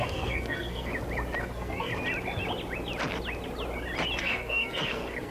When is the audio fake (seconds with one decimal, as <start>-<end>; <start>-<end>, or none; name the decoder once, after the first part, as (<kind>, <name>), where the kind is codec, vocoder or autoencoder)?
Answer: 0.0-0.9 (codec, SNAC); 1.4-1.9; 4.2-5.3